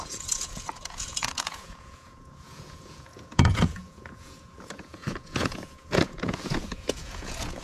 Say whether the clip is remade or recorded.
remade